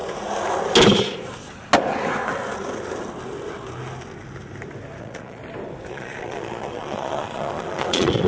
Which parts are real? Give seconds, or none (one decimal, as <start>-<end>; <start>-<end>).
0.0-5.0; 5.4-5.9